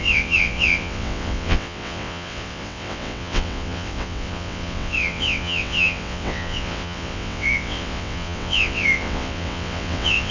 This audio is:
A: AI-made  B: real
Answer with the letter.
A